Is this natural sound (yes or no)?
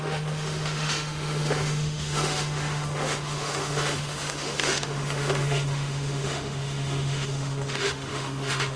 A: no